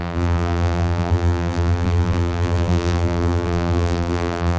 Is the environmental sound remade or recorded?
remade